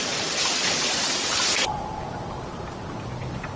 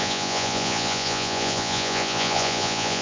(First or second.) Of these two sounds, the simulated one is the second